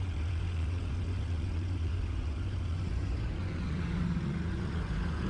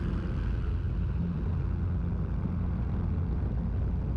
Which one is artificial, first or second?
first